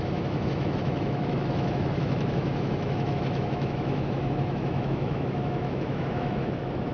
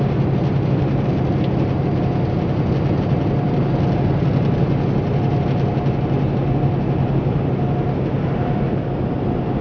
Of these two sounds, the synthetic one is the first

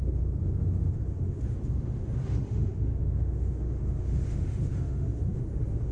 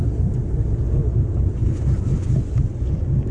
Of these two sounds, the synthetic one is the first